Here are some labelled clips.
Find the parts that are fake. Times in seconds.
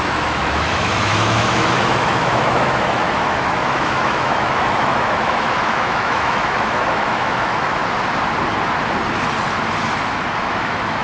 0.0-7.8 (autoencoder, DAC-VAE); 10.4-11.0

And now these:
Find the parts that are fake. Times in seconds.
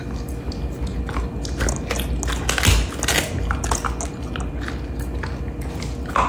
none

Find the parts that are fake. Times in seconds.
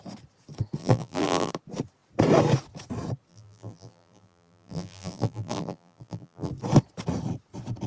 0.8-1.5 (vocoder, BigVGAN v2); 3.3-6.5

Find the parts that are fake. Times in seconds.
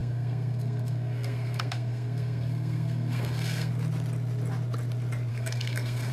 0.0-3.7 (codec, SNAC); 5.3-6.1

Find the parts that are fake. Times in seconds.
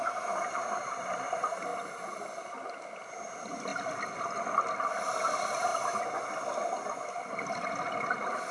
none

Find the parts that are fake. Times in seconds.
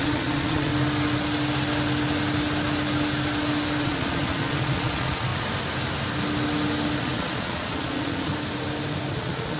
0.0-0.7 (vocoder, Vocos); 3.8-5.3; 7.0-8.3; 9.1-9.6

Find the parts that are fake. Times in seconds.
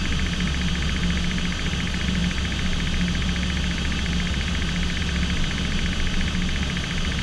none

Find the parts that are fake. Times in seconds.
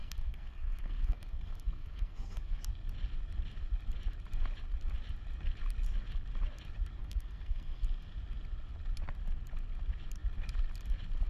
0.0-2.6 (codec, SNAC); 7.0-7.8